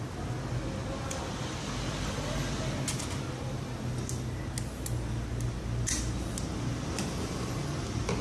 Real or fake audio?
real